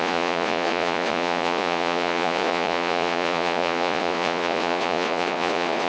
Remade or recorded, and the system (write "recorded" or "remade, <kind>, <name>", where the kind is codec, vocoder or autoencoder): remade, vocoder, Vocos